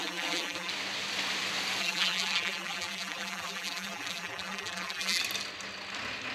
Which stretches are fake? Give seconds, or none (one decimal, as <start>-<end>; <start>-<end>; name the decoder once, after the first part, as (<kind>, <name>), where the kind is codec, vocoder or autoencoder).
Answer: 0.0-0.7 (vocoder, BigVGAN v2); 1.8-5.2